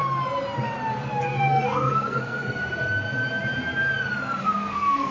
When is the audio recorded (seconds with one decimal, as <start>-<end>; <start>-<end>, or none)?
0.0-1.2; 2.6-4.4

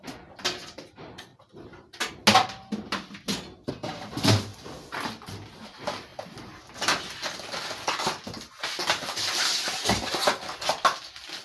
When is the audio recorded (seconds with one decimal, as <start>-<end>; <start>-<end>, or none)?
0.0-11.4

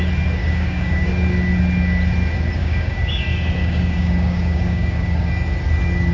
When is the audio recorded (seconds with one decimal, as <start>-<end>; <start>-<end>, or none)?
0.0-0.4; 1.1-2.6; 3.2-3.6; 5.3-6.1

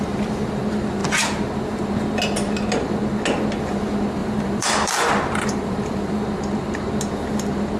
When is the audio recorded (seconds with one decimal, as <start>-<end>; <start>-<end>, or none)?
0.0-4.2; 6.2-7.8

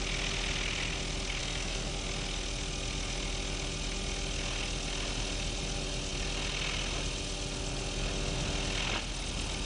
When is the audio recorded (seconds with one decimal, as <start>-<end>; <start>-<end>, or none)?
0.0-1.4; 1.9-9.7